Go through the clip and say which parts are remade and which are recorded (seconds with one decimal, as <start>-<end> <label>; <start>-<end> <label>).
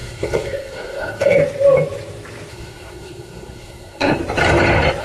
0.0-1.4 remade; 1.4-2.5 recorded; 2.5-4.2 remade; 4.2-5.0 recorded